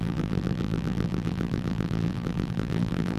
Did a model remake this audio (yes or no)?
yes